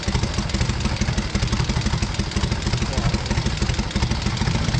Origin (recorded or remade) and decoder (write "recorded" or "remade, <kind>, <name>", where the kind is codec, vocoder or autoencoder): recorded